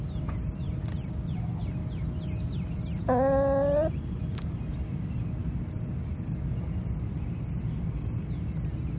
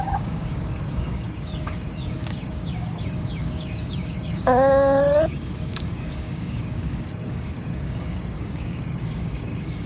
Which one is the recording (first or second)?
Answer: first